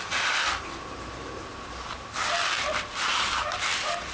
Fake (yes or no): yes